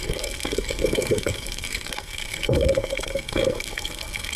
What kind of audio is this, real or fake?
fake